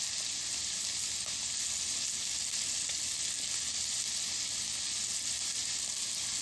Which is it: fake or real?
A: real